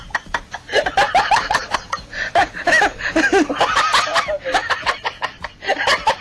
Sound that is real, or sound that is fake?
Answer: real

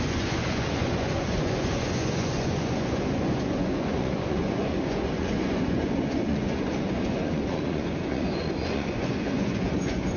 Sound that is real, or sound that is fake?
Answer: fake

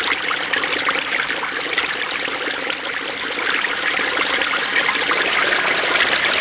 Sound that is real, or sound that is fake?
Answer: real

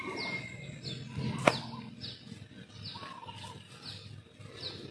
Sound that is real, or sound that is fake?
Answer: real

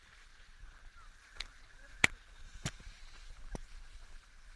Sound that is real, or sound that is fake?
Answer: real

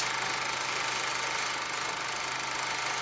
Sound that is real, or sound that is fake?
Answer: real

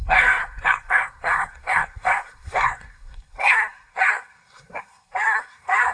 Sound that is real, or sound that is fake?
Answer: fake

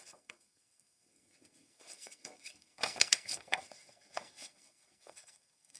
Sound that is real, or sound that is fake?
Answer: fake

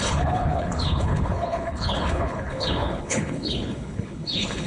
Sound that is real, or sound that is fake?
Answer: fake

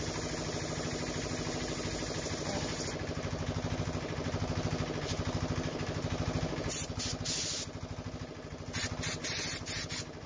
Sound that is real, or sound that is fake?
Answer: real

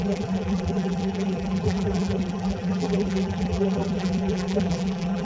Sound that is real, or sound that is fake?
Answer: fake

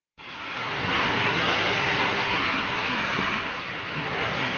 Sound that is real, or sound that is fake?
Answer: fake